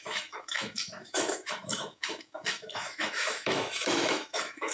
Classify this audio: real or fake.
fake